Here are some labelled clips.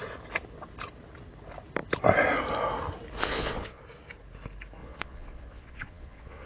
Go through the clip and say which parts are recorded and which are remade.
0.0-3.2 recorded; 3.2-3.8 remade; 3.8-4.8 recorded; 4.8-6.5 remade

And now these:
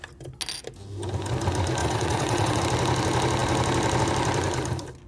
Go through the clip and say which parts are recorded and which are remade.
0.0-1.8 recorded; 1.8-2.6 remade; 2.6-5.1 recorded